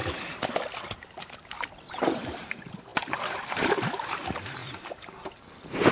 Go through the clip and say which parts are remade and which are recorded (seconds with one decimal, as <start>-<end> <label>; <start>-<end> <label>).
0.0-1.9 recorded; 1.9-4.6 remade; 4.6-5.9 recorded